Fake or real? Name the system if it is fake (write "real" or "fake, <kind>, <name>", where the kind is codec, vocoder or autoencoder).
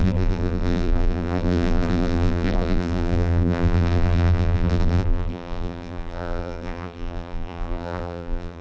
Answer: fake, vocoder, BigVGAN v2